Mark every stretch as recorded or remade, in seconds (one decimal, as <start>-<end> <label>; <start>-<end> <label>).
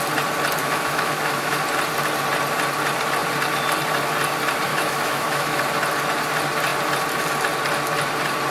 0.0-0.6 recorded; 0.6-1.6 remade; 1.6-4.7 recorded; 4.7-5.6 remade; 5.6-8.5 recorded